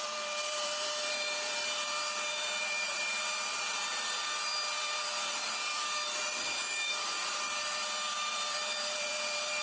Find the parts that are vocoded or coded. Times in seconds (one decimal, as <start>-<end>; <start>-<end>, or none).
0.0-9.6